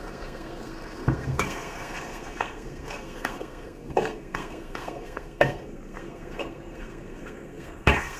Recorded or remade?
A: remade